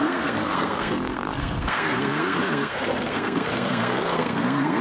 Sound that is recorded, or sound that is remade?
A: remade